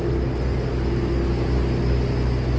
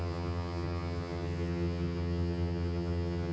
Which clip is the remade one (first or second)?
second